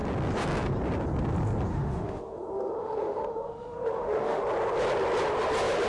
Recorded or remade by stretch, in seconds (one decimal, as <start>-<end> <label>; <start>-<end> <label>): 0.0-1.7 recorded; 1.7-4.4 remade; 4.4-5.9 recorded